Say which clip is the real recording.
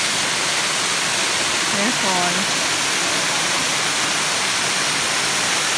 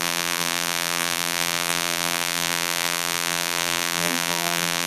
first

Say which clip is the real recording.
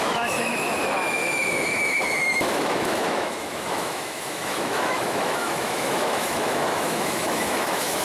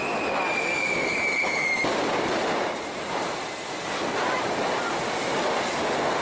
second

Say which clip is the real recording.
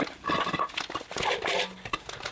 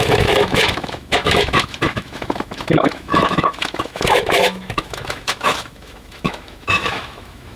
first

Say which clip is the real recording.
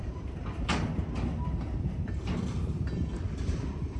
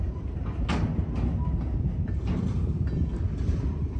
second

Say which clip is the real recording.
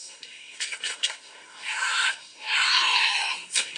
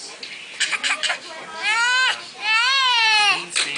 second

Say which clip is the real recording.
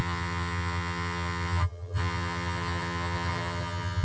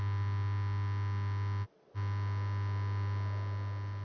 second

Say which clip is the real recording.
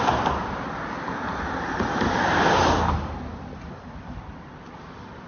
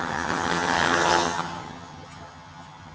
first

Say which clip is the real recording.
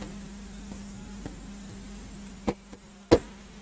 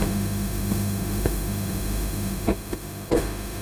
first